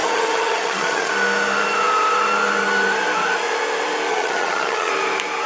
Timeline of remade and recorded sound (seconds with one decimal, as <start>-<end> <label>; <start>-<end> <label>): 0.0-1.1 remade; 1.1-4.1 recorded; 4.1-4.9 remade; 4.9-5.5 recorded